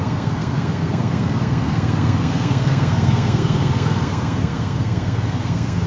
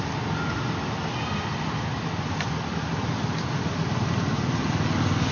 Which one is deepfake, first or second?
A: first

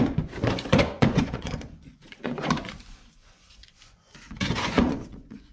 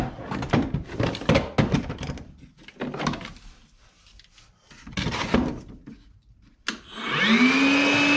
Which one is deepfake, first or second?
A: first